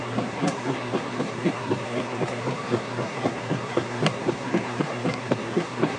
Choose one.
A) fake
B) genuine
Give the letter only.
A